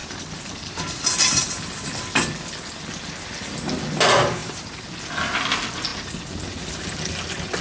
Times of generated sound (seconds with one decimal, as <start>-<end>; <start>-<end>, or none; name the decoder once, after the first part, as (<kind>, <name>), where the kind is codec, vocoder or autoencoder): 0.0-1.6 (vocoder, BigVGAN v2); 4.4-4.9